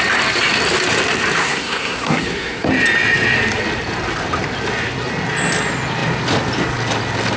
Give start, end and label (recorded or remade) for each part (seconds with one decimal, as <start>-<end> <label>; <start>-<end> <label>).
0.0-1.4 recorded; 1.4-2.7 remade; 2.7-7.4 recorded